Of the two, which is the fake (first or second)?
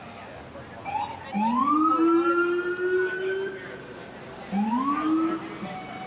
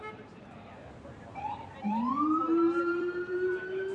second